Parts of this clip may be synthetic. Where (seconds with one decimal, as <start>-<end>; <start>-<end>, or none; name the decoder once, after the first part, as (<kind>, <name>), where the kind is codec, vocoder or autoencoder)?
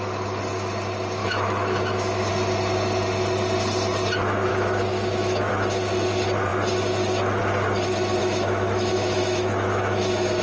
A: 1.2-2.3 (autoencoder, DAC-VAE); 4.5-5.5; 8.2-10.4